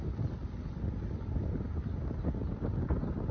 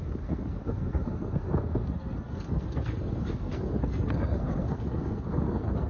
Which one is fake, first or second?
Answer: second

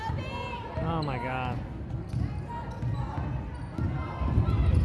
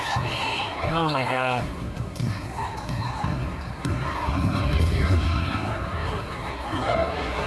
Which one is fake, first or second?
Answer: second